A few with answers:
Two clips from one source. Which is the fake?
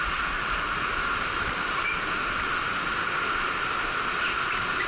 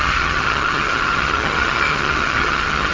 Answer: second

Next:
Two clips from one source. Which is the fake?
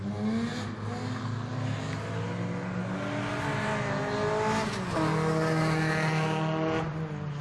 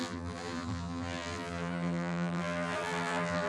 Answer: second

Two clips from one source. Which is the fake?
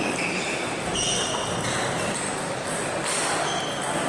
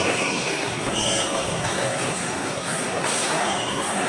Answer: second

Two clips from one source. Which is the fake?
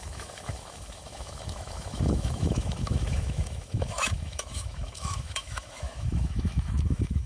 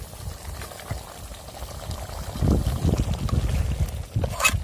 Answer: first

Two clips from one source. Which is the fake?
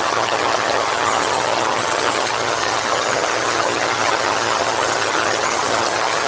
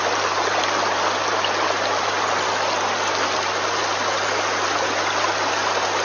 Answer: first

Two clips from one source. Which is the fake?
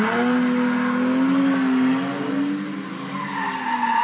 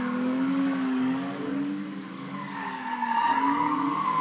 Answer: second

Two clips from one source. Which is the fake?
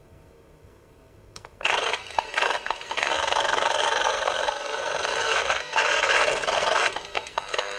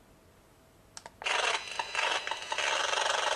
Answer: first